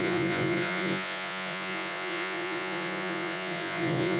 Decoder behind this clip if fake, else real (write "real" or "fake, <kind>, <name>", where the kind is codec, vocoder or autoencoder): fake, vocoder, Vocos